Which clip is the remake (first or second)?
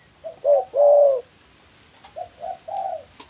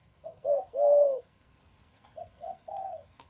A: second